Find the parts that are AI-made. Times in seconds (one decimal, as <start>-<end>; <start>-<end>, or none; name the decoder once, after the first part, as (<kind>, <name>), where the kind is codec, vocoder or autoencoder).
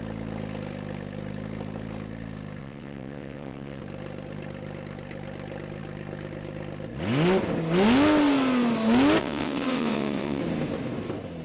2.6-3.8 (vocoder, WaveNeXt); 9.2-10.4